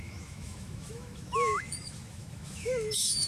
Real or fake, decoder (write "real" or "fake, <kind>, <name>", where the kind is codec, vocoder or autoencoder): fake, autoencoder, DAC-VAE